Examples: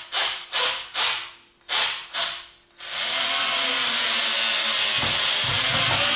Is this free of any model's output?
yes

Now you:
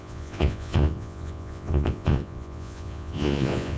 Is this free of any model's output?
no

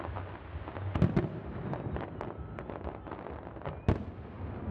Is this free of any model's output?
yes